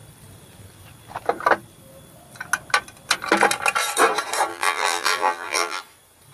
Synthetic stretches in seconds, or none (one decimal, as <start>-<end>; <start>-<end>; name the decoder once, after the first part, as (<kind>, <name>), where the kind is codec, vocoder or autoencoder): 4.5-5.8 (vocoder, BigVGAN v2)